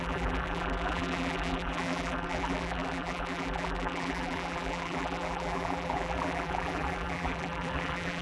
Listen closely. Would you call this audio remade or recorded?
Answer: remade